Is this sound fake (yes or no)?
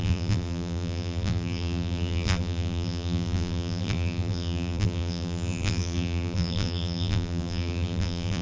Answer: yes